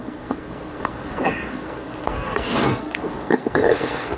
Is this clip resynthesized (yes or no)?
yes